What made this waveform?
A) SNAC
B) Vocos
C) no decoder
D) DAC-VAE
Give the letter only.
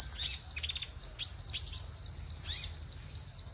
C